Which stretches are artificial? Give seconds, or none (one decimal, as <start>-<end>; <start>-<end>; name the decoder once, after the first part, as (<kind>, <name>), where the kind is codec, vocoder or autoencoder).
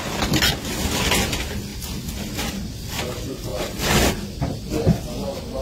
none